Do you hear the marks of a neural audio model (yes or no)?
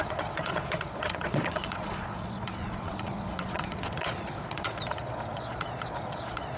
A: yes